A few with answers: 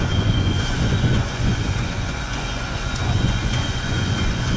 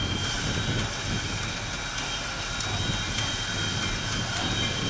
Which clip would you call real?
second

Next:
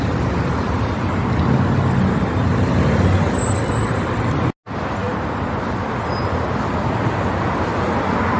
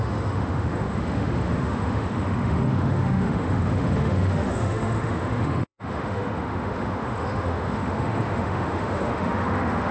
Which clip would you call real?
first